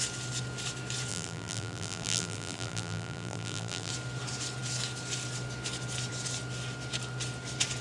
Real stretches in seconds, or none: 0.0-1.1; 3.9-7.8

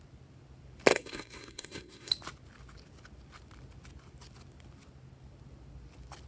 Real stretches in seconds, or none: 0.0-0.9; 2.1-6.3